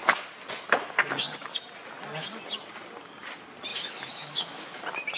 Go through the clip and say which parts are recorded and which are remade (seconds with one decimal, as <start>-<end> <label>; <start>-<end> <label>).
0.0-3.7 recorded; 3.7-4.8 remade; 4.8-5.2 recorded